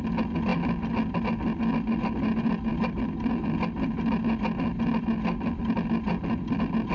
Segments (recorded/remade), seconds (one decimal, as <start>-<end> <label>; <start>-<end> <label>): 0.0-6.9 recorded